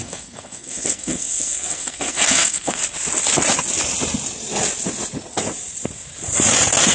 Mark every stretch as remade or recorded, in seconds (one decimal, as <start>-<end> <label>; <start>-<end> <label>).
0.0-2.8 remade; 2.8-6.9 recorded